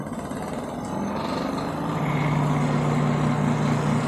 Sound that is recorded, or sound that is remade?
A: recorded